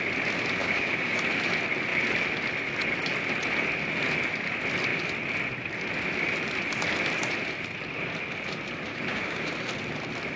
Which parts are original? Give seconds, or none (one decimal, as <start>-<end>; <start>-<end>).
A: 0.0-0.6; 1.2-8.9; 9.5-10.4